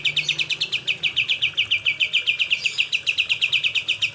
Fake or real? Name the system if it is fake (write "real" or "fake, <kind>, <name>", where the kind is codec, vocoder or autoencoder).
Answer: real